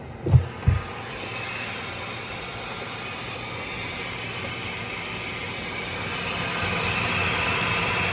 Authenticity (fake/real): real